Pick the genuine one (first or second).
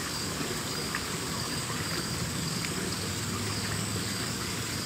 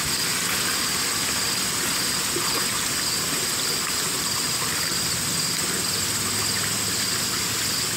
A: second